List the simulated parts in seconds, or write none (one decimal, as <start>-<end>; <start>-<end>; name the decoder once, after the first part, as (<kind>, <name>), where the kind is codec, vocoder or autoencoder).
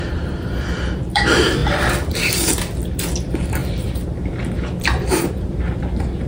0.0-1.6 (vocoder, BigVGAN v2); 3.2-6.3